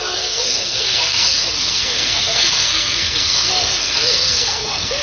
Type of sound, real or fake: fake